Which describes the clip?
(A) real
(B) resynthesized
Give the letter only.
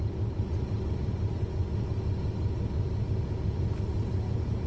A